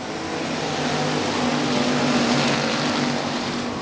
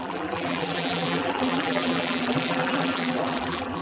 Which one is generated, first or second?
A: second